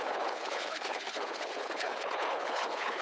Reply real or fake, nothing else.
fake